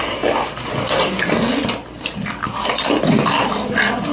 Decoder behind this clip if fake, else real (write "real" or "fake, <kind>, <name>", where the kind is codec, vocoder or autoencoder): real